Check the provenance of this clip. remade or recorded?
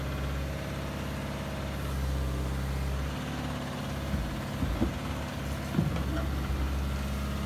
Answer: recorded